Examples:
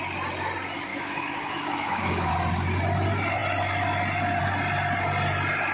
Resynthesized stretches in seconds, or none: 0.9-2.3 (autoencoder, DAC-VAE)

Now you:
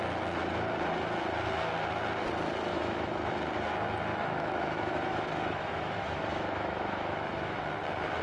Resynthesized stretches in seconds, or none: 2.7-3.3 (autoencoder, DAC-VAE); 4.1-7.6

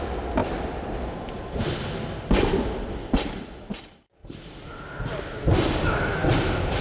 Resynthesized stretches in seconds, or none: none

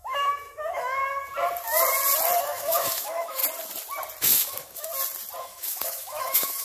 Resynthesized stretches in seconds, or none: 0.0-1.0 (autoencoder, DAC-VAE); 2.4-3.4; 4.2-4.9; 5.4-6.6

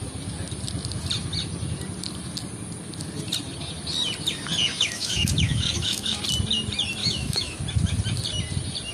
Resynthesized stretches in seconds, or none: 4.7-6.2 (autoencoder, DAC-VAE); 7.0-7.6

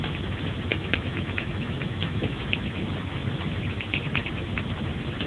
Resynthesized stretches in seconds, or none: 0.7-2.4 (autoencoder, DAC-VAE)

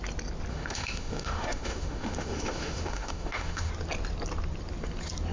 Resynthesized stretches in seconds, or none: 0.5-3.7 (autoencoder, DAC-VAE)

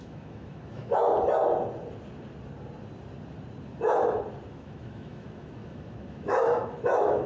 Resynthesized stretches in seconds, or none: 0.0-1.0 (autoencoder, DAC-VAE); 4.5-7.3